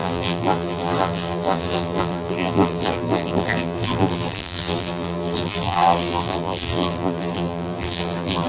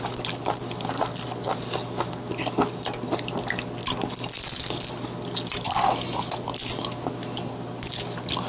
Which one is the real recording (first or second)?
second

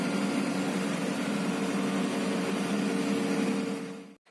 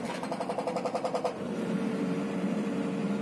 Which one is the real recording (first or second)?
first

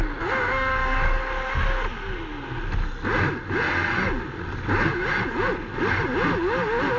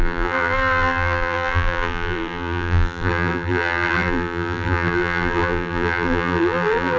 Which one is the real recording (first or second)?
first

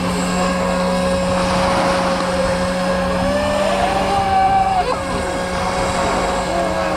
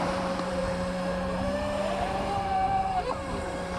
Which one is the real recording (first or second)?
first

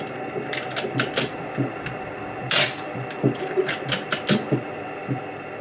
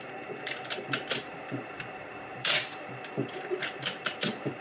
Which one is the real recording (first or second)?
first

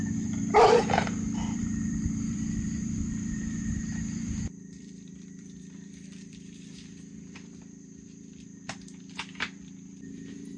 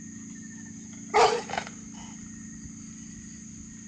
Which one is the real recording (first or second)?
second